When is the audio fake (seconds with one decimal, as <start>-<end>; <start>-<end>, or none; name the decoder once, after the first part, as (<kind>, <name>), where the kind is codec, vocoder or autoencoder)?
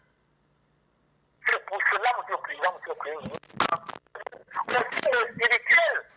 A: 4.4-5.4 (vocoder, Vocos)